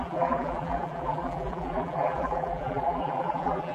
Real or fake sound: fake